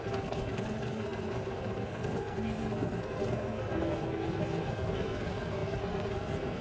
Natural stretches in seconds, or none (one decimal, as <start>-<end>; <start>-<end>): none